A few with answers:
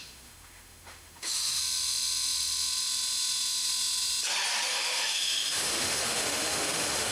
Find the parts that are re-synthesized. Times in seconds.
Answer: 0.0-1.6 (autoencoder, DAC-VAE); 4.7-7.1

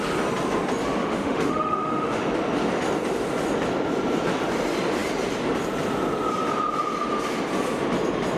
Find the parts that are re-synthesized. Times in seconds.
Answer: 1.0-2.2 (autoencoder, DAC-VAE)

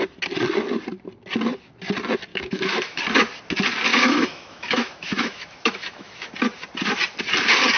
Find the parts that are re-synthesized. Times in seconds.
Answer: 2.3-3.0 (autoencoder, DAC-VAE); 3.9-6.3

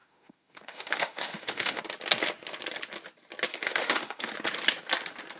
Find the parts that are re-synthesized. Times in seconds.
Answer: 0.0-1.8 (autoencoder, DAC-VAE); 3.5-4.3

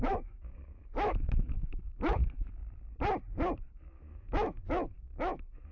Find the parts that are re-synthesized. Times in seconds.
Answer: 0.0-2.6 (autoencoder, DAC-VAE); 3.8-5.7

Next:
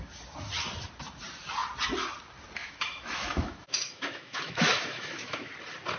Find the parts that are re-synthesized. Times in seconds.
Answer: 2.6-5.5 (autoencoder, DAC-VAE)

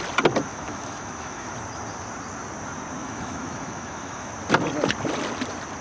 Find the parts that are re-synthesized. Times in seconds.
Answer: 0.5-1.5 (autoencoder, DAC-VAE); 3.0-4.3

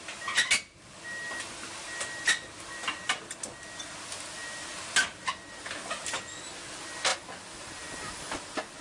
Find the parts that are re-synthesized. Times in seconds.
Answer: none